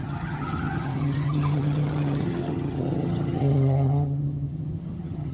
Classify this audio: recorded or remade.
remade